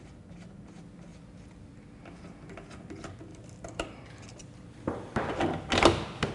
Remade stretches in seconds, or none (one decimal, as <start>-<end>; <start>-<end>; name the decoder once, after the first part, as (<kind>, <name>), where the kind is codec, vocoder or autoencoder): 1.1-2.0 (vocoder, BigVGAN v2); 3.3-5.4

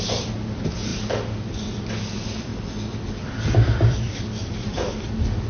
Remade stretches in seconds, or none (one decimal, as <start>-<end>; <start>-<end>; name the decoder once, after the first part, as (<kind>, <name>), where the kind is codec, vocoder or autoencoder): 0.0-2.5 (vocoder, BigVGAN v2); 3.1-5.5

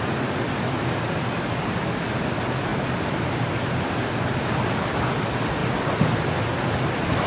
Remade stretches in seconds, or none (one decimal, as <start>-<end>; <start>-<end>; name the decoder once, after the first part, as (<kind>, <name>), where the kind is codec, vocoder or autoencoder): 2.7-3.8 (vocoder, BigVGAN v2)

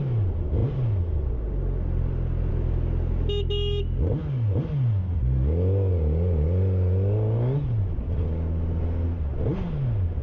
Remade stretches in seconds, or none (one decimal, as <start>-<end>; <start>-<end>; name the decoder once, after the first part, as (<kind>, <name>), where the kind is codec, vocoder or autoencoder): none

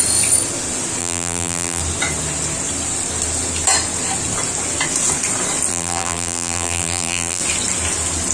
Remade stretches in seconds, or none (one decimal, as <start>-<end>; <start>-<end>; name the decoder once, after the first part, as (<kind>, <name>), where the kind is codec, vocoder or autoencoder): 1.0-1.8 (vocoder, BigVGAN v2); 5.7-7.4